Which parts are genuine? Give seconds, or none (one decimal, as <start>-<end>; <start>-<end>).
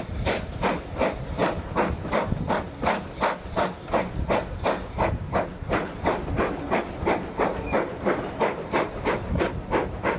0.0-5.5; 6.3-7.5